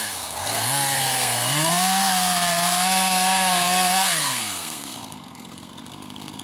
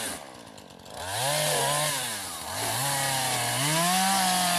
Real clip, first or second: second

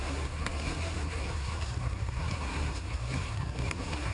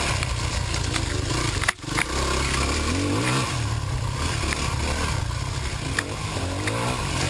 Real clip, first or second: second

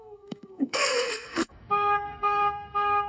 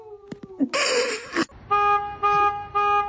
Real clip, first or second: second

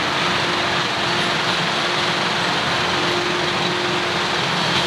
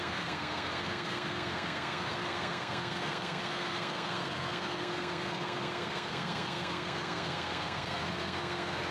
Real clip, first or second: first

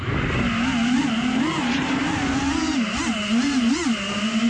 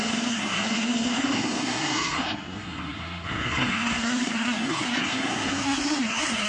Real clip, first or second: first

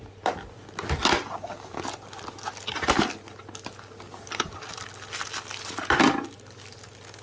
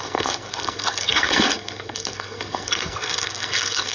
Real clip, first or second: first